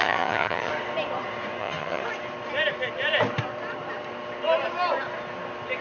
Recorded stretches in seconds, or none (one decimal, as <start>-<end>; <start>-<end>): 0.7-1.6; 2.0-5.8